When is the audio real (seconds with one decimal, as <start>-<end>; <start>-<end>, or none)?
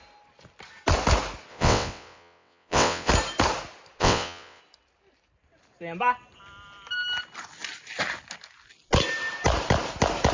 0.0-1.5; 3.1-4.0; 4.6-10.3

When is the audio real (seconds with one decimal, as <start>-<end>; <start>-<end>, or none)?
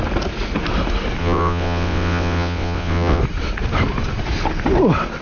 0.0-1.2; 3.2-5.2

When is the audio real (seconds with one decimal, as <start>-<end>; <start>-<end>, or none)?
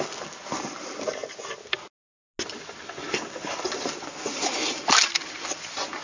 0.0-6.0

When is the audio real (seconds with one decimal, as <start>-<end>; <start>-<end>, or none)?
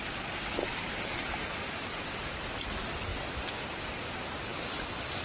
0.0-5.2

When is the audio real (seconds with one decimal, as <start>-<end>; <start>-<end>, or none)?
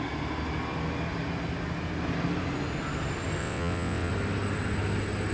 0.0-3.4; 4.1-5.3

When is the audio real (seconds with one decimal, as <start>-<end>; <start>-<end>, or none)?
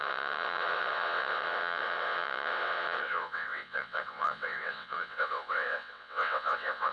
none